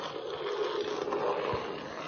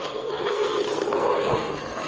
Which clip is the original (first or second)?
first